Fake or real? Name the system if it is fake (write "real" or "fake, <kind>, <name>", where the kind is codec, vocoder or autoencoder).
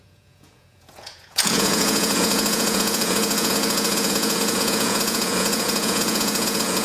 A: fake, vocoder, Vocos